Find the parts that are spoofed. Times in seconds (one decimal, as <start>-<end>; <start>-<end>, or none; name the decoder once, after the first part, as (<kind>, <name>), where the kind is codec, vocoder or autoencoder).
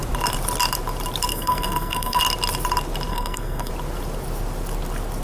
1.3-2.2 (codec, SNAC); 3.1-3.7